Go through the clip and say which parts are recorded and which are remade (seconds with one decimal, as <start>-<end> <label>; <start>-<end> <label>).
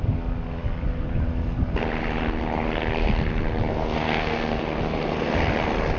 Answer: 0.0-3.7 recorded; 3.7-4.6 remade; 4.6-6.0 recorded